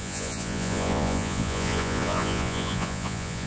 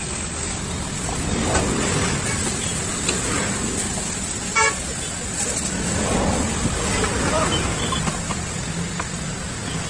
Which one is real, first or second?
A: second